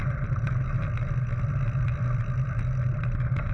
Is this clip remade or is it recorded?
remade